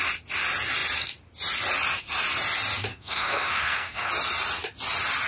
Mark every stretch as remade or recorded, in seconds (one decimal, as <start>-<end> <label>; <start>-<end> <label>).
0.0-2.9 recorded; 2.9-4.1 remade; 4.1-5.3 recorded